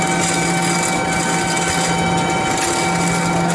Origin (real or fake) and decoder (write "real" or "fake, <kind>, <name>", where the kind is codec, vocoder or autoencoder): real